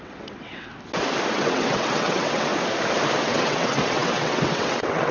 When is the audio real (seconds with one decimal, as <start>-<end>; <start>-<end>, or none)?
0.7-1.3; 2.5-3.2